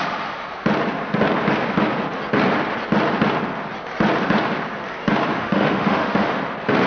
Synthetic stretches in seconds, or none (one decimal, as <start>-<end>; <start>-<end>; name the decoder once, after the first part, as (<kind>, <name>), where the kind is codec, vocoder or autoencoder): 5.3-6.4 (autoencoder, DAC-VAE)